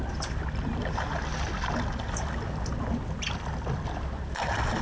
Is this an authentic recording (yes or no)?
yes